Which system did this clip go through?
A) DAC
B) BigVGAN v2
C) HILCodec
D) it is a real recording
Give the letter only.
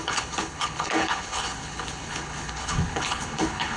C